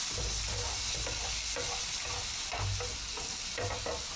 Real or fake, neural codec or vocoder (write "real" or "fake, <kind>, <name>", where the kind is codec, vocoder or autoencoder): real